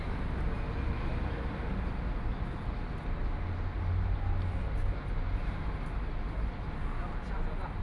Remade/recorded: recorded